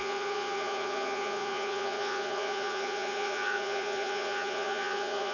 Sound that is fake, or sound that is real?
fake